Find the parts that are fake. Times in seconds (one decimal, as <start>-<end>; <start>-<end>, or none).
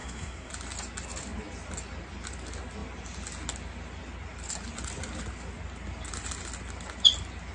0.0-0.5